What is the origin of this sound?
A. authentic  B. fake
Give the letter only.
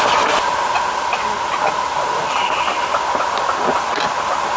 A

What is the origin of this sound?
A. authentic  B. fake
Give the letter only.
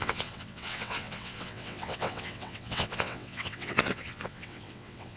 B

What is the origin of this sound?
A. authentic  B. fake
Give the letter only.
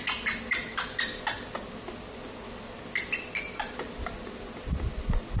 A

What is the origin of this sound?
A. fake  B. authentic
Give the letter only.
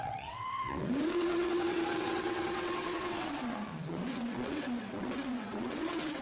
A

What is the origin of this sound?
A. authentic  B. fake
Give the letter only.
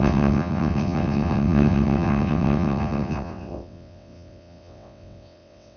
B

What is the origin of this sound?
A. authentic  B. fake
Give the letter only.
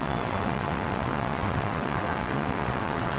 B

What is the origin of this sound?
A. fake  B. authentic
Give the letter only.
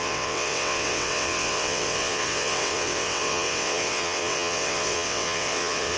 A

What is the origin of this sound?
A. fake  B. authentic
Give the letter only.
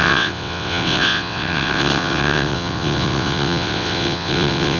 A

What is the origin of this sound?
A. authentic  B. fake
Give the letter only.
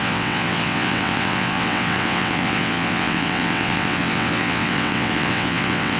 B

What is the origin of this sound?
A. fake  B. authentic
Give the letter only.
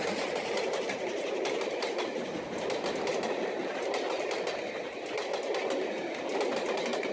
B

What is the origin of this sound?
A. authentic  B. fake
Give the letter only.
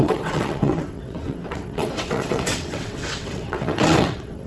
B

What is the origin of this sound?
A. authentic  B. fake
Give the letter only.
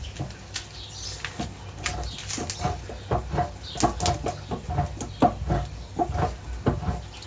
A